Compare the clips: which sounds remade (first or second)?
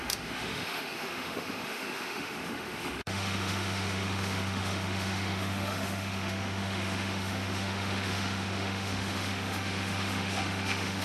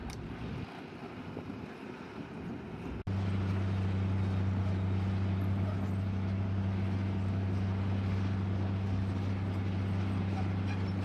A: first